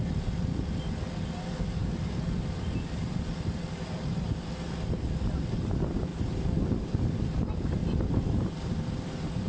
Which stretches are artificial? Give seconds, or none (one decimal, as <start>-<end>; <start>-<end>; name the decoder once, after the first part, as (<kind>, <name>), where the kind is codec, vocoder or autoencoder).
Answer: 1.8-4.9 (vocoder, BigVGAN v2); 7.8-8.4